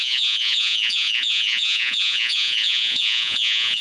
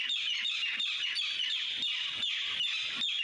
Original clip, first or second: second